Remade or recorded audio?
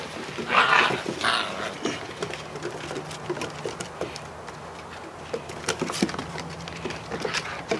recorded